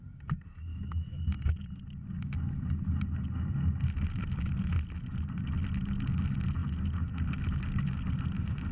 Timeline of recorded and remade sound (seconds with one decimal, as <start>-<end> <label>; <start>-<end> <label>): 0.0-0.7 recorded; 0.7-1.2 remade; 1.2-8.7 recorded